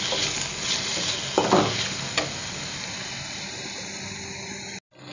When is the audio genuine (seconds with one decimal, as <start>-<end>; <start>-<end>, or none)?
0.0-5.1